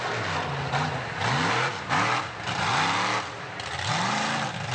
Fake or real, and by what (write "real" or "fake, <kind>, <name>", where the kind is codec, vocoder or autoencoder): real